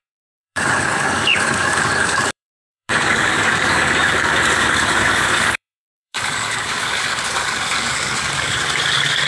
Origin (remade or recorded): remade